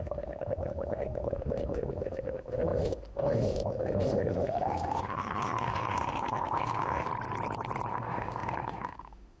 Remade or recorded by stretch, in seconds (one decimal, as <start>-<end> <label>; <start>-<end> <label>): 0.0-7.1 remade; 7.1-7.9 recorded; 7.9-9.4 remade